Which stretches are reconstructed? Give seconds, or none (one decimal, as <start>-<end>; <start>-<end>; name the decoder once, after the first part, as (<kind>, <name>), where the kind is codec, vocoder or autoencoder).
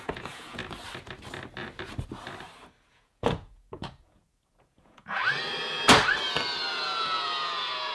0.0-0.6 (vocoder, Vocos); 2.9-5.2; 6.7-7.9